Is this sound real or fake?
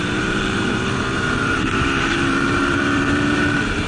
fake